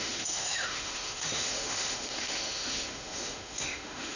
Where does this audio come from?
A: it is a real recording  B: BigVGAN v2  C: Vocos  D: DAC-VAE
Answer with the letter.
D